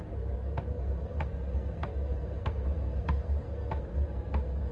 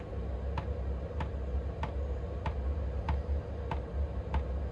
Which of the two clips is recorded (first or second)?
second